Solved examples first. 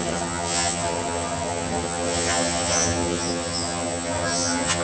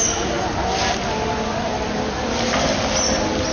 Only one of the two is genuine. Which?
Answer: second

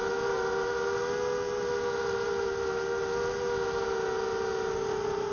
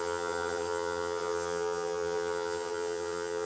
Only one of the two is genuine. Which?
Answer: first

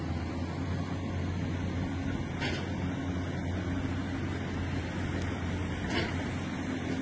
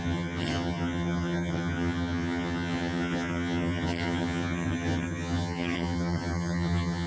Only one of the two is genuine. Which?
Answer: first